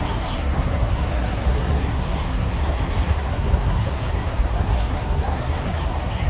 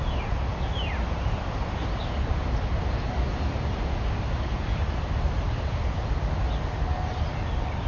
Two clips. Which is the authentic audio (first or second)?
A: second